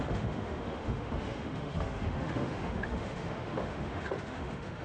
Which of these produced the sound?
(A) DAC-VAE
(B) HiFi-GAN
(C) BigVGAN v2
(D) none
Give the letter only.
A